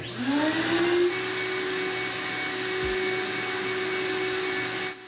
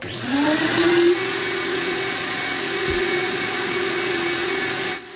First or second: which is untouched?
first